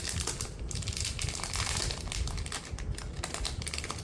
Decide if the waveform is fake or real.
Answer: real